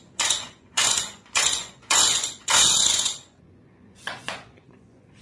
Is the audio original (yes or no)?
no